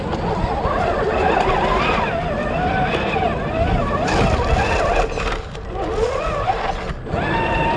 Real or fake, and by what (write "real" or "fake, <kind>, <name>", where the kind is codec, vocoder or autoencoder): real